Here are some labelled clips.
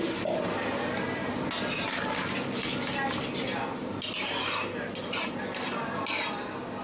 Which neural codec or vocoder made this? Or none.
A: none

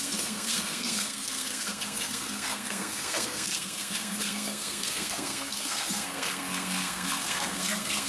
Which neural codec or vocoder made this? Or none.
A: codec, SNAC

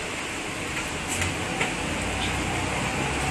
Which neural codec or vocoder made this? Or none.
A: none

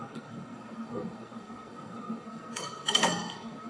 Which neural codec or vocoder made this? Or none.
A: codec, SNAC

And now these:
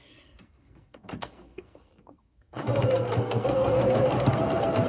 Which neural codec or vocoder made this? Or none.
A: codec, SNAC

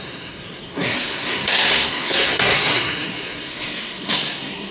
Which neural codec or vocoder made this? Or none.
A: codec, SNAC